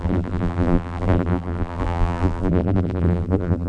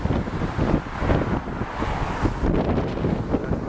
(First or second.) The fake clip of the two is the first